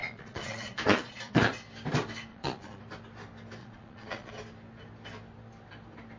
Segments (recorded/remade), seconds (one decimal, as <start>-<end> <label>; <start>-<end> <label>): 0.0-1.5 remade; 1.5-2.3 recorded; 2.3-2.8 remade; 2.8-3.6 recorded; 3.6-4.3 remade; 4.3-6.2 recorded